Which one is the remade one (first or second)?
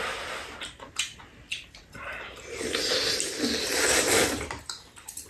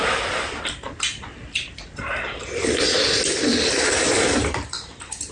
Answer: second